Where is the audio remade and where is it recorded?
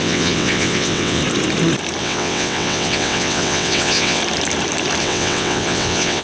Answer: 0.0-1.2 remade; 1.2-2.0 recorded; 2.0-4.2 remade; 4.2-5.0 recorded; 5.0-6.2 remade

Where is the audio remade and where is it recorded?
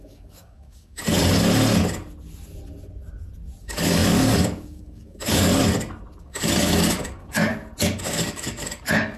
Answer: 0.0-1.0 remade; 1.0-3.6 recorded; 3.6-5.5 remade; 5.5-6.2 recorded; 6.2-7.5 remade; 7.5-8.0 recorded; 8.0-9.2 remade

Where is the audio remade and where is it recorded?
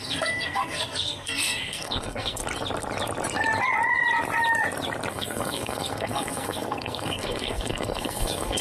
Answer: 0.0-2.4 remade; 2.4-5.1 recorded; 5.1-8.6 remade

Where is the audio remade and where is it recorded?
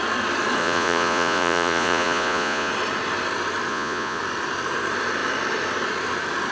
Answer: 0.0-0.6 recorded; 0.6-2.7 remade; 2.7-3.7 recorded; 3.7-4.2 remade; 4.2-6.5 recorded